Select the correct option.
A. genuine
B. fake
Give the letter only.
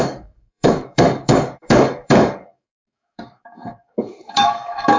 B